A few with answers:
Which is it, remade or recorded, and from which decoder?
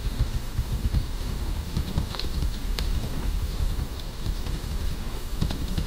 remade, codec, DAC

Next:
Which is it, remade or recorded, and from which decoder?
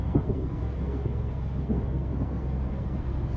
remade, codec, SNAC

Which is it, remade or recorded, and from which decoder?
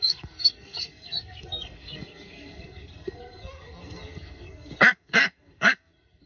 remade, codec, SNAC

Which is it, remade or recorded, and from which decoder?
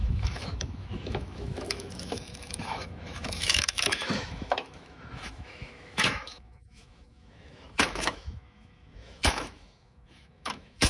remade, autoencoder, DAC-VAE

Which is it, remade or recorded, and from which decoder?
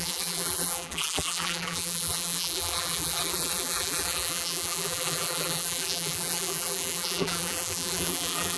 remade, vocoder, BigVGAN v2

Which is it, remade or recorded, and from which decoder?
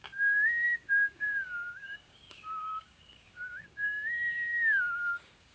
remade, codec, DAC